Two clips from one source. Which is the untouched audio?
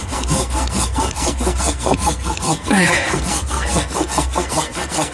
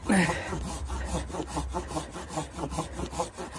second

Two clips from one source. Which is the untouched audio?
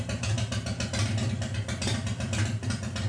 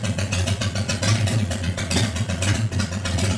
first